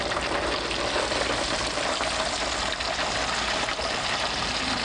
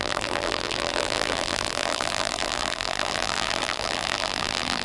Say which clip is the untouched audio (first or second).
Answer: first